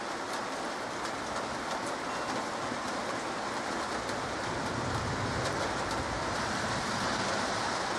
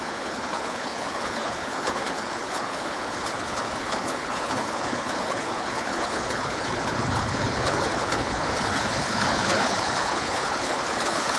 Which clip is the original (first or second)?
first